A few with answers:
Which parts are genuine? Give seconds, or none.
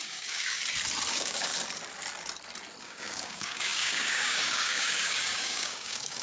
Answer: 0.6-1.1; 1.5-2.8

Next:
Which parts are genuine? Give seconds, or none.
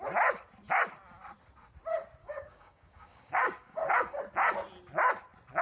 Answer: 0.0-2.2; 4.2-5.6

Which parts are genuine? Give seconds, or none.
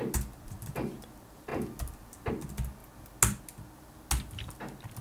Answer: 0.0-5.0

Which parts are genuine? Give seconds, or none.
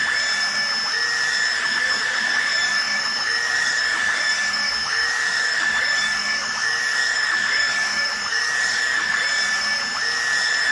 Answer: 0.0-1.6; 9.2-10.7